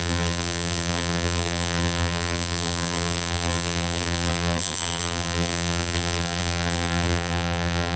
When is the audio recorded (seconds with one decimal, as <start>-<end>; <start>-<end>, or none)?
none